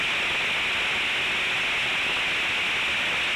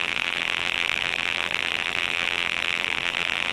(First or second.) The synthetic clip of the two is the second